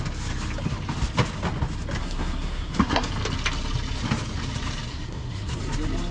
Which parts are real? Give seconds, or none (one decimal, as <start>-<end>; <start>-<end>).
0.0-2.0; 3.1-4.9; 5.6-6.1